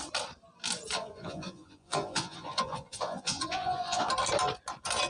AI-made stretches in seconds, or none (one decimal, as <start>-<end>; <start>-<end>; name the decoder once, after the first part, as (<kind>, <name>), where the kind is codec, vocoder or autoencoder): 1.0-4.1 (vocoder, Vocos)